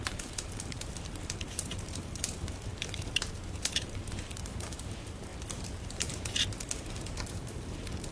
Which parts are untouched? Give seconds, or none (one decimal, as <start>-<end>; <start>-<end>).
none